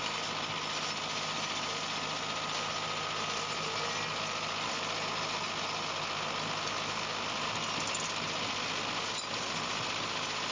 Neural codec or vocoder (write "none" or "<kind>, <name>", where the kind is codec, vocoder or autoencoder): none